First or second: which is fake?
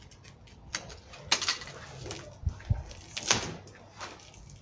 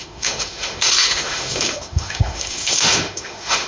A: second